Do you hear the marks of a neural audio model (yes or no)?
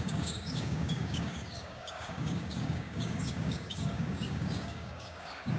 yes